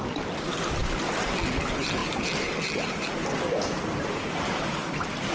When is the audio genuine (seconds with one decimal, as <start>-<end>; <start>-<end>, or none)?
0.0-5.3